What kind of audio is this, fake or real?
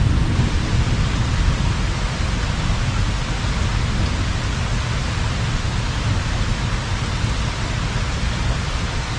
real